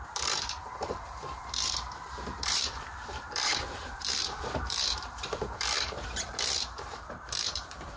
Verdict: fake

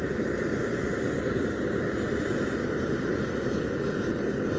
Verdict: real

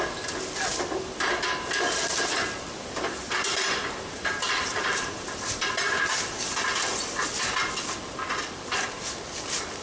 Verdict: real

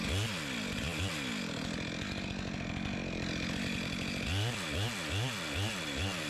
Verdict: real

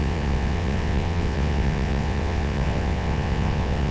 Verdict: fake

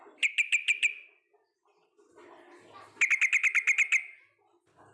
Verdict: real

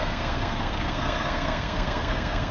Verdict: fake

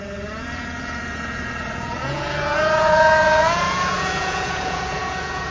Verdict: fake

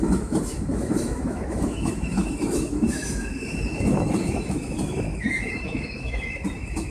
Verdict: fake